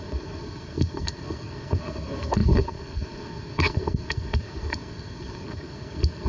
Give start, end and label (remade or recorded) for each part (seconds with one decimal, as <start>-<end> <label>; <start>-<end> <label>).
0.0-6.3 remade